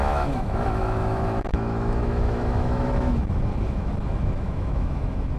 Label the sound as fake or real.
fake